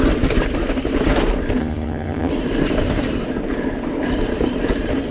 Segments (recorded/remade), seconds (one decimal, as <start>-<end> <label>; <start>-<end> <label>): 0.0-1.6 recorded; 1.6-2.3 remade; 2.3-5.1 recorded